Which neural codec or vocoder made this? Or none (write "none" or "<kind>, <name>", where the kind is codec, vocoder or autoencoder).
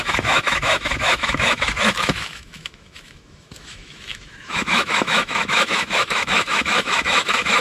autoencoder, DAC-VAE